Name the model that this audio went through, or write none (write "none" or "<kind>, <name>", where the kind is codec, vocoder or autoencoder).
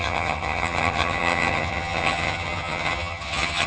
vocoder, HiFi-GAN